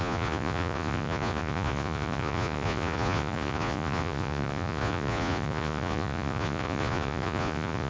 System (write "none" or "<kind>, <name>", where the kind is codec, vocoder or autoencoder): vocoder, Vocos